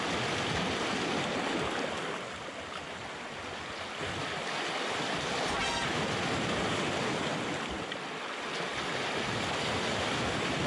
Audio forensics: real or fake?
real